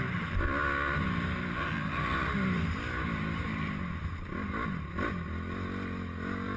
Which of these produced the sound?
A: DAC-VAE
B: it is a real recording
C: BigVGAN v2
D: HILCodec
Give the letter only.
B